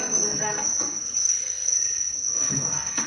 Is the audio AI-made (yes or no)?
yes